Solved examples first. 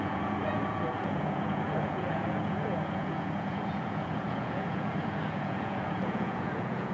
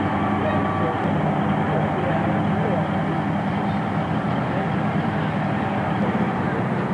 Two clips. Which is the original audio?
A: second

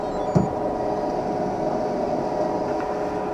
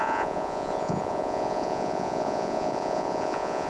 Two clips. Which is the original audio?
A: first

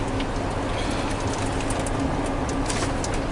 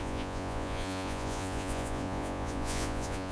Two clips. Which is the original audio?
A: first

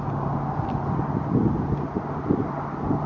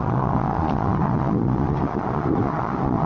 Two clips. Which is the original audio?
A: first